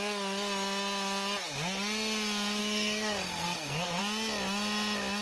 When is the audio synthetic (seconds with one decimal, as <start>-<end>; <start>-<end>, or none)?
2.6-4.0